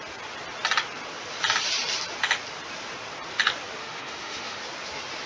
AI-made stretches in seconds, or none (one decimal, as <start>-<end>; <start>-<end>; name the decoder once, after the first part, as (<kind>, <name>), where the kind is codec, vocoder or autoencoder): 3.8-4.6 (autoencoder, DAC-VAE)